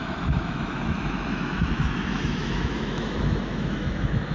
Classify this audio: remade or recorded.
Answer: remade